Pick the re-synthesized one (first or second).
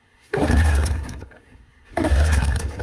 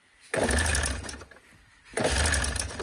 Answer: first